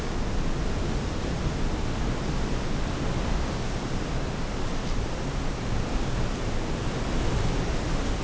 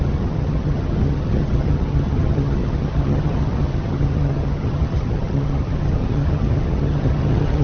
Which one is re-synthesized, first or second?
second